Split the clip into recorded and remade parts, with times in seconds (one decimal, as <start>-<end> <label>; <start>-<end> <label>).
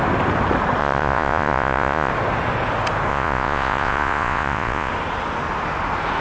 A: 0.0-0.8 recorded; 0.8-2.1 remade; 2.1-3.1 recorded; 3.1-4.9 remade; 4.9-6.2 recorded